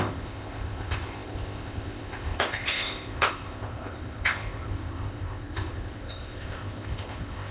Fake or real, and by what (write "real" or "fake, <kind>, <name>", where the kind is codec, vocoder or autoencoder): fake, codec, ZipCodec